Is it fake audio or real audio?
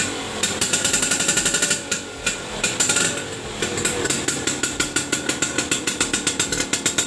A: real